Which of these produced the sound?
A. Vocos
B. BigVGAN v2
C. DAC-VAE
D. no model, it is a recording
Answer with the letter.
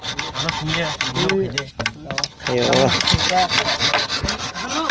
D